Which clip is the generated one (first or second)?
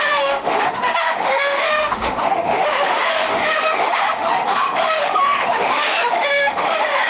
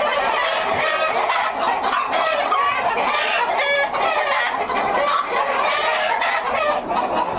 first